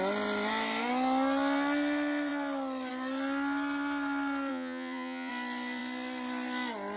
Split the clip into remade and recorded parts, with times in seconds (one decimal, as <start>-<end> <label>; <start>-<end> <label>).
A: 0.0-4.5 recorded; 4.5-5.3 remade; 5.3-7.0 recorded